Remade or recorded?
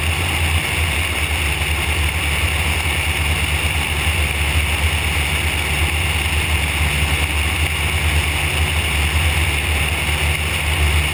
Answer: recorded